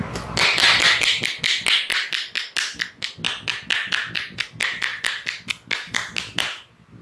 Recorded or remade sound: recorded